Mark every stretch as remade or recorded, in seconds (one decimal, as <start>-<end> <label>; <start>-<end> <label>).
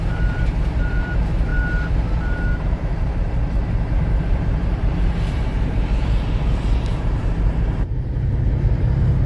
0.0-3.4 remade; 3.4-4.3 recorded; 4.3-9.3 remade